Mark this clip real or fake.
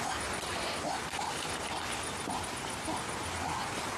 real